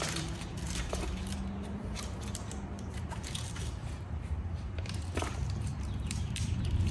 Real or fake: fake